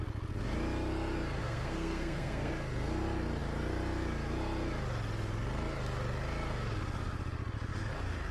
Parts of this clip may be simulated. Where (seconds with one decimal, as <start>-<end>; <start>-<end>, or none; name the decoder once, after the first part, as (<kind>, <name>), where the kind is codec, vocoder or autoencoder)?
1.4-2.5 (codec, SNAC)